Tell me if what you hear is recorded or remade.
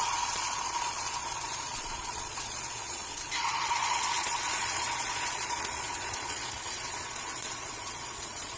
remade